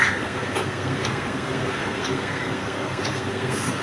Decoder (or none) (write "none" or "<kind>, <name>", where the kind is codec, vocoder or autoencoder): codec, SNAC